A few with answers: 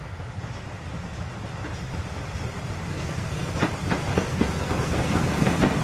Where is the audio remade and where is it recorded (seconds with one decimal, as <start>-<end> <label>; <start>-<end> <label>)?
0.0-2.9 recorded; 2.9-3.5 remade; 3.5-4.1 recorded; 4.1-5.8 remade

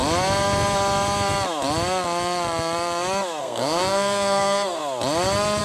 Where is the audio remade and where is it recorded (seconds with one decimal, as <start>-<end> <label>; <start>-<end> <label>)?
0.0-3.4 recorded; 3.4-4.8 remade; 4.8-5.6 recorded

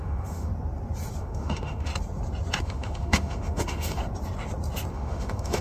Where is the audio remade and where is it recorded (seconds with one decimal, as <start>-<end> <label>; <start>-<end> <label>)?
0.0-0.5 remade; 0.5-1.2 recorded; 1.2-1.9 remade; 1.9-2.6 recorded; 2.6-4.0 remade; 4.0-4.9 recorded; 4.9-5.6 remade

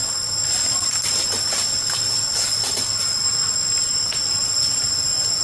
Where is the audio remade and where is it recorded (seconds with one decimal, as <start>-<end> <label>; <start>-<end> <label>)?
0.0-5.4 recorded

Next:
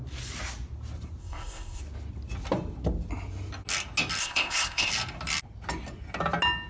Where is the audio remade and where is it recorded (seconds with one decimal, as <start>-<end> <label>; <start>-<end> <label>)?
0.0-1.2 recorded; 1.2-1.8 remade; 1.8-4.2 recorded; 4.2-4.9 remade; 4.9-6.7 recorded

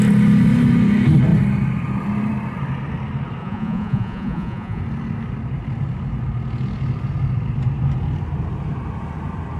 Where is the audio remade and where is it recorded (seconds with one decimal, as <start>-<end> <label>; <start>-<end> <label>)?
0.0-3.4 recorded; 3.4-4.8 remade; 4.8-9.6 recorded